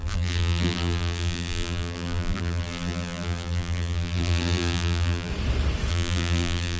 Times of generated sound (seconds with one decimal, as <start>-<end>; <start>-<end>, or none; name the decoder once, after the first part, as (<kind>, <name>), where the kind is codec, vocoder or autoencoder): 0.0-5.3 (vocoder, BigVGAN v2); 5.9-6.8